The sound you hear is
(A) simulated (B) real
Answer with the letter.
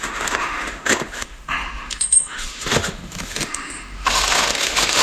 A